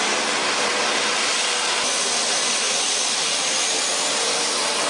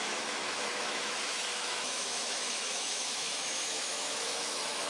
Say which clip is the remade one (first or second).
second